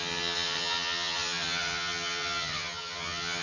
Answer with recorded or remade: remade